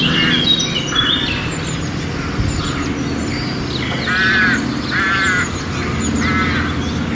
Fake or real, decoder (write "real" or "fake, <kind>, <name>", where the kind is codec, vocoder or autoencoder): real